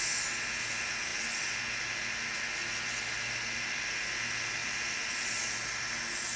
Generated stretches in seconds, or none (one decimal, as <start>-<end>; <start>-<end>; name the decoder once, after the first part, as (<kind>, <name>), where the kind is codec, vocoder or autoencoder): 4.6-5.4 (vocoder, BigVGAN v2)